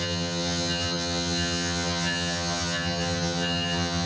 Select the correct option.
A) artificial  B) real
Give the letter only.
A